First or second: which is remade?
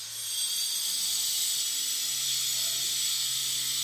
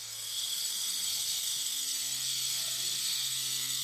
second